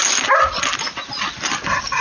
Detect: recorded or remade recorded